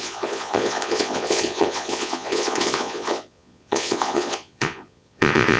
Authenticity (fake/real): fake